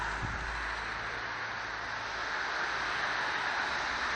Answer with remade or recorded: recorded